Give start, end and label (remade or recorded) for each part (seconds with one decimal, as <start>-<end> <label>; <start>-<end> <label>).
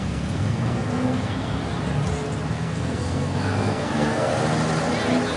0.0-1.6 remade; 1.6-2.5 recorded; 2.5-4.3 remade; 4.3-5.4 recorded